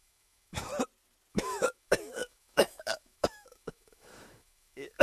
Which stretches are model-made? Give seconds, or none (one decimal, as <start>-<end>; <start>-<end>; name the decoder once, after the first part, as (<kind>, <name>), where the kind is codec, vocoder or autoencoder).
0.0-0.7 (autoencoder, DAC-VAE); 1.3-5.0